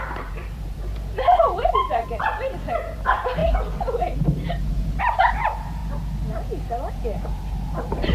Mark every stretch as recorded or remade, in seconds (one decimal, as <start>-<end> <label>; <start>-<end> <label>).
0.0-3.4 remade; 3.4-5.0 recorded; 5.0-5.8 remade; 5.8-6.9 recorded; 6.9-8.1 remade